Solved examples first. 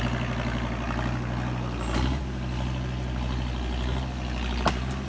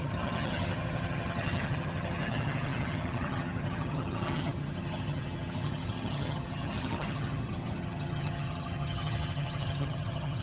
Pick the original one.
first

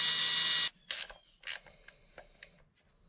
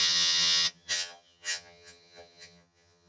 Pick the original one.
first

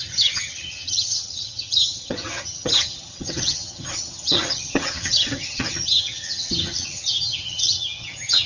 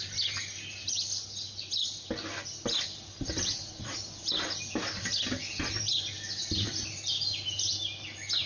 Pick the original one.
second